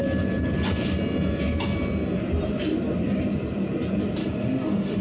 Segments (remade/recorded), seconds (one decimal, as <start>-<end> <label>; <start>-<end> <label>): 0.0-4.2 recorded; 4.2-5.0 remade